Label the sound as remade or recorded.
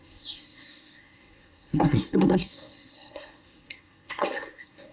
remade